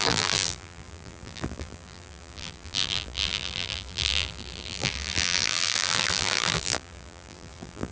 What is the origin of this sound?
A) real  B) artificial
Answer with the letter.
B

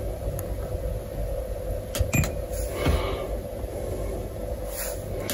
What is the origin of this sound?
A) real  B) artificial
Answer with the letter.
A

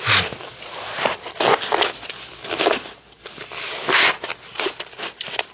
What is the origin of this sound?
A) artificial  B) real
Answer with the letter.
B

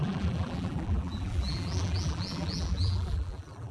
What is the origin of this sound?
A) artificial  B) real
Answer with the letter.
A